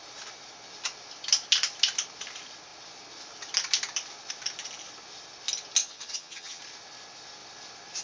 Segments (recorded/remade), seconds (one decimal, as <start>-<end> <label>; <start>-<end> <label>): 0.0-5.8 recorded; 5.8-6.6 remade; 6.6-8.0 recorded